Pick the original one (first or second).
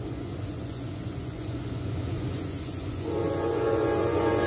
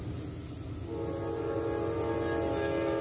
second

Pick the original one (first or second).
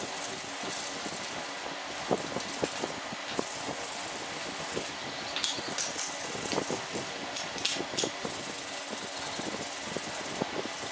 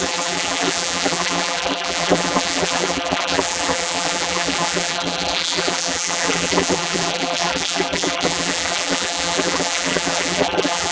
first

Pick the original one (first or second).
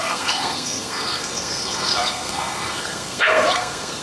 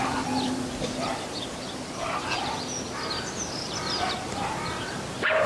second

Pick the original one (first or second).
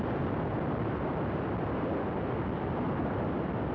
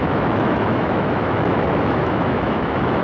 first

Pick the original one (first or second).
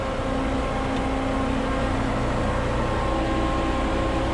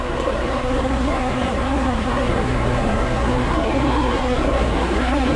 first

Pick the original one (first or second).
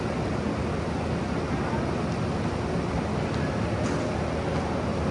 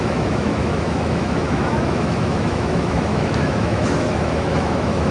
first